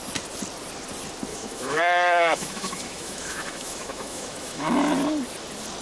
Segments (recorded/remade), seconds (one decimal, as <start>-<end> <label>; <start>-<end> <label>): 0.0-1.3 recorded; 1.3-4.8 remade; 4.8-5.8 recorded